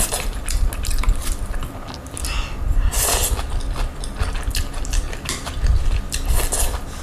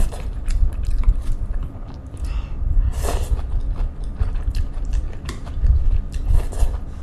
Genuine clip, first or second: first